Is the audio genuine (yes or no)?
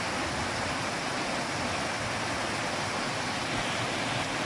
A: yes